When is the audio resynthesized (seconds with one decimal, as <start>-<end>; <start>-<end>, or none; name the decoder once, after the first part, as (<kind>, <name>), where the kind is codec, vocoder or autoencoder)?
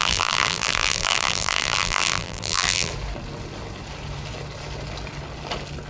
0.0-2.9 (vocoder, BigVGAN v2)